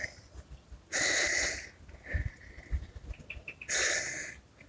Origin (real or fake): real